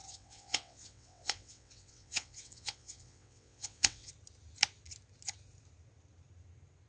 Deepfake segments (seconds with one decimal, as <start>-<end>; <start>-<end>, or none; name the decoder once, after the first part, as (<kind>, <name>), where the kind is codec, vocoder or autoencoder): 0.0-4.1 (vocoder, WaveNeXt)